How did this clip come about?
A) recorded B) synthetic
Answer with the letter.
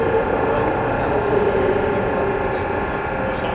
A